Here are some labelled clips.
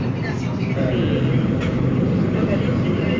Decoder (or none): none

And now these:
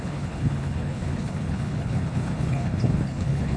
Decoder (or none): codec, HILCodec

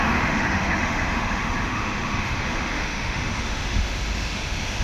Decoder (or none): autoencoder, DAC-VAE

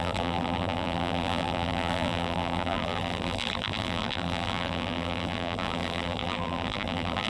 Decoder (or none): vocoder, BigVGAN v2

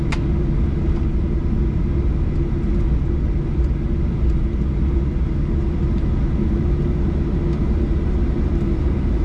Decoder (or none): none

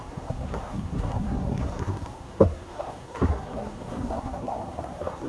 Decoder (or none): codec, SNAC